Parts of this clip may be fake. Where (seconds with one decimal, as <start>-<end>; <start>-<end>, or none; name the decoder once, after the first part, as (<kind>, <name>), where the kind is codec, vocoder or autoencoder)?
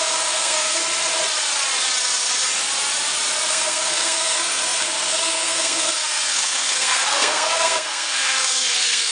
0.0-0.8 (codec, SNAC); 3.5-9.1